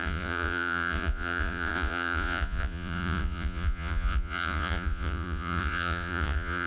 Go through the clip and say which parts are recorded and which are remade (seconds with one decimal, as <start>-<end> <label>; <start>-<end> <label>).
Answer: 0.0-6.7 remade